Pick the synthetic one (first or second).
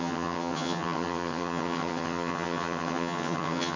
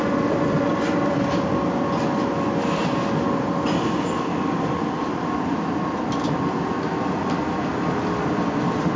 first